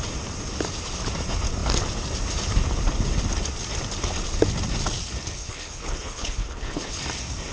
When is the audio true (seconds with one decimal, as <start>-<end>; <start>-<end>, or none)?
0.0-5.4; 6.9-7.5